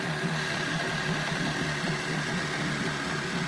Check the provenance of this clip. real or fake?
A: real